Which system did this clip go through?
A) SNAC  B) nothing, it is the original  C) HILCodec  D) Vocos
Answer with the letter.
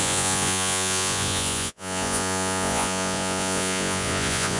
D